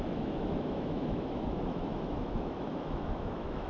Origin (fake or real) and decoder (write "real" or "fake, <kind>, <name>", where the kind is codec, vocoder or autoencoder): fake, autoencoder, DAC-VAE